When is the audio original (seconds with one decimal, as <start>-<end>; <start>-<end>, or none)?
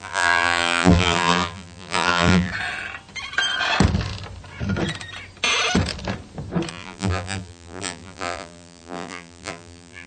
2.5-6.7